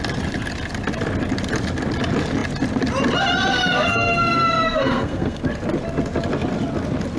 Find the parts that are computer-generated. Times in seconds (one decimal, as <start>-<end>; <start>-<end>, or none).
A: 3.5-5.4